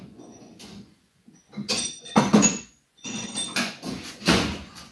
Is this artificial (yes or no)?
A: yes